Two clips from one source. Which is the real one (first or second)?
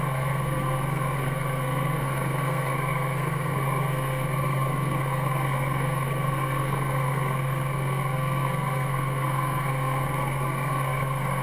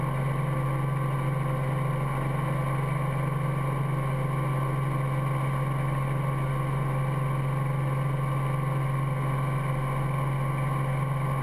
second